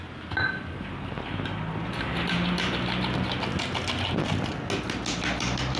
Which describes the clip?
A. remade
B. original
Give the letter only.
B